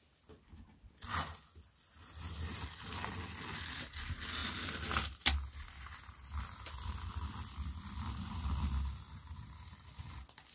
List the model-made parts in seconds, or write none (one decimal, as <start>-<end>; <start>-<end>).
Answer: none